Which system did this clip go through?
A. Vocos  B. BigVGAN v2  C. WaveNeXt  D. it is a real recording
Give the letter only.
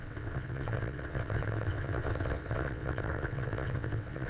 C